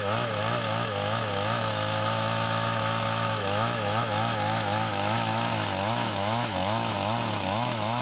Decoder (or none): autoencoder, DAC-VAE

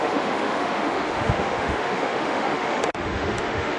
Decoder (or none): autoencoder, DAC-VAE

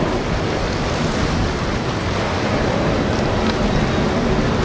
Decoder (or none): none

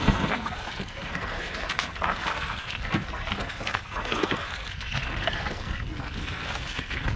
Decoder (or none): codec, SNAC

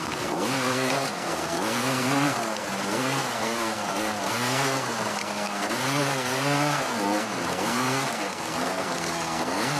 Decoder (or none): codec, SNAC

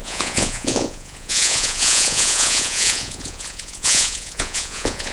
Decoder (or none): vocoder, Vocos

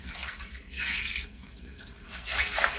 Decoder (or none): codec, SNAC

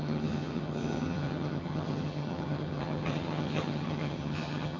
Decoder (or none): vocoder, HiFi-GAN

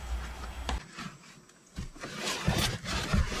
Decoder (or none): none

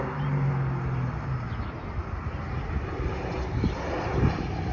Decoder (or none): none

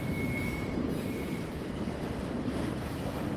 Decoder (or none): vocoder, BigVGAN v2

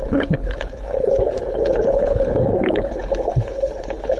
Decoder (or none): codec, HILCodec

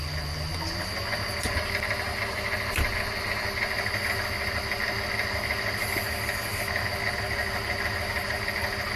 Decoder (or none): none